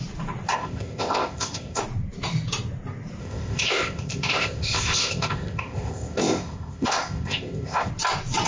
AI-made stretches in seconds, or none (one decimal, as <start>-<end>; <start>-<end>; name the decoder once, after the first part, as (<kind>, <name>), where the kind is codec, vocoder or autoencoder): 0.5-1.8 (codec, ZipCodec); 3.2-7.9